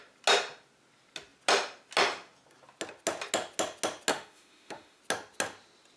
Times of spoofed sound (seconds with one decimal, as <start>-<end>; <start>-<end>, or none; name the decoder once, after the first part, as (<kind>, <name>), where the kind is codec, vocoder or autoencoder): 4.1-5.0 (autoencoder, DAC-VAE)